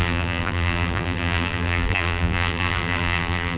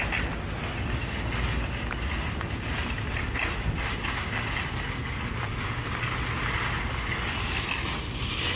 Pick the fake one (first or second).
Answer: first